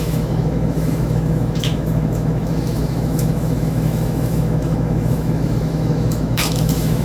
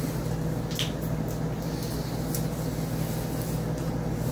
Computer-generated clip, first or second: first